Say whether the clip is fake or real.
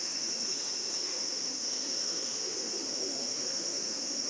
fake